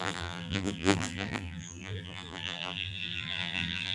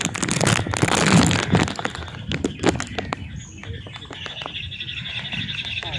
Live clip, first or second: second